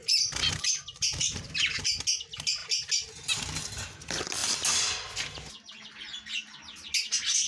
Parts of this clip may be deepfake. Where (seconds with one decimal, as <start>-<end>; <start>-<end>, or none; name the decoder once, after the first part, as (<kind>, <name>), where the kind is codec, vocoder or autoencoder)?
0.0-1.5 (vocoder, BigVGAN v2)